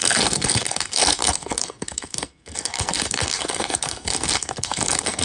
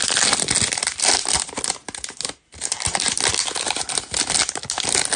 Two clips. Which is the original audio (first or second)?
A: second